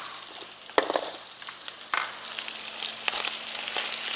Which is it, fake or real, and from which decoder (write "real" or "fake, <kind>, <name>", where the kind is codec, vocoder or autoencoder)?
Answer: real